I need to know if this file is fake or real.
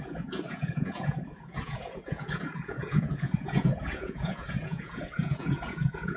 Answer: fake